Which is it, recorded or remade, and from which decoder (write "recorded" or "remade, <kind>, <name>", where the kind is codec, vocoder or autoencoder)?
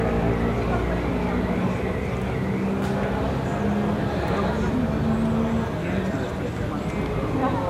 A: recorded